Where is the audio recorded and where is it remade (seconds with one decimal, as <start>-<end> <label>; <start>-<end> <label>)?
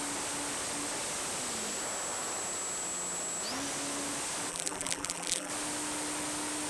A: 0.0-4.5 recorded; 4.5-5.5 remade; 5.5-6.7 recorded